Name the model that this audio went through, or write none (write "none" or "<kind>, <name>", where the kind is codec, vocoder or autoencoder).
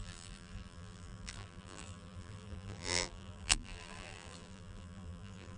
vocoder, BigVGAN v2